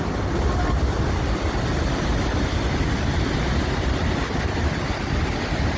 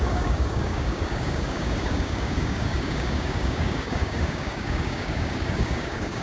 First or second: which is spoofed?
second